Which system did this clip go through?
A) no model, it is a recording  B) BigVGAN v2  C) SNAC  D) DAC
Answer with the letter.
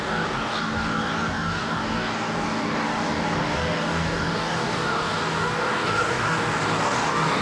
D